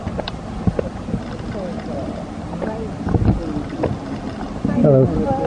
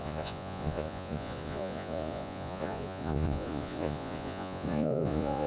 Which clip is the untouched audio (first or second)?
first